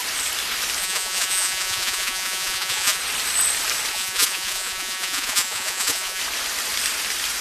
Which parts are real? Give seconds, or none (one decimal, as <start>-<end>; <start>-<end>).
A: 0.0-0.8; 3.0-3.9; 6.2-7.4